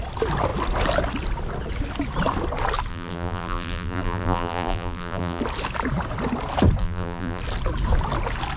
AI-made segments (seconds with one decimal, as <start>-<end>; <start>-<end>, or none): 2.9-5.4; 6.8-7.4